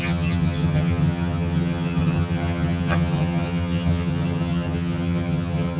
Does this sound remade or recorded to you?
remade